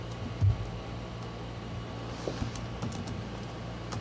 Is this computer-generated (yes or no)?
no